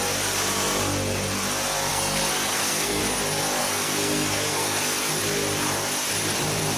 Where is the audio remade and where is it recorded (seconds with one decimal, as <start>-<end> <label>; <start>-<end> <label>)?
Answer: 0.0-1.9 recorded; 1.9-3.0 remade; 3.0-3.6 recorded; 3.6-5.1 remade; 5.1-6.8 recorded